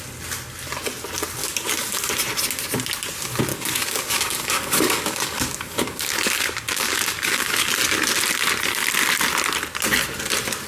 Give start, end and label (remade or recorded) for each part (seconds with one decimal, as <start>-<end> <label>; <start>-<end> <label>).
0.0-1.4 recorded; 1.4-2.1 remade; 2.1-3.5 recorded; 3.5-7.7 remade; 7.7-10.7 recorded